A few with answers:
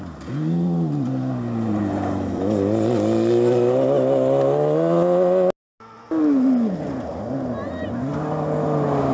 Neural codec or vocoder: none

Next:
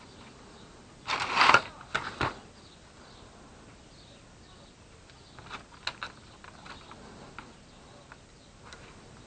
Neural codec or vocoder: none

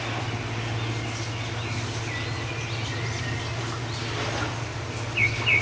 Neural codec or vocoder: none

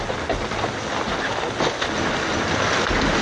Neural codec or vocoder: none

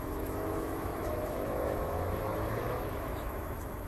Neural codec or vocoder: autoencoder, DAC-VAE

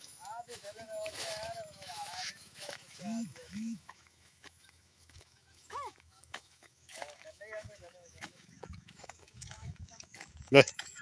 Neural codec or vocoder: autoencoder, DAC-VAE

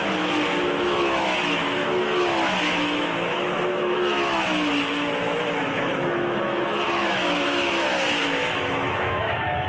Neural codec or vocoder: autoencoder, DAC-VAE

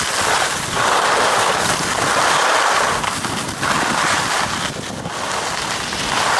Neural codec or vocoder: none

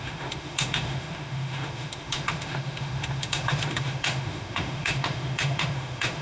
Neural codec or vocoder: autoencoder, DAC-VAE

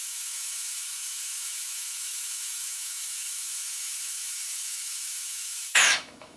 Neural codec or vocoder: autoencoder, DAC-VAE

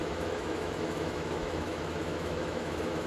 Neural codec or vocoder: autoencoder, DAC-VAE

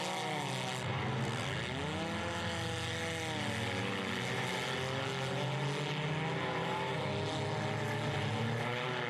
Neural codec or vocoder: none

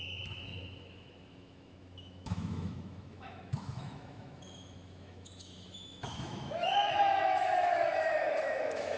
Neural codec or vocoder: autoencoder, DAC-VAE